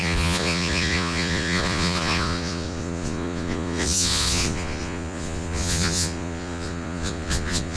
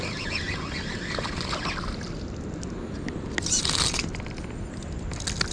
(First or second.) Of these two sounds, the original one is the second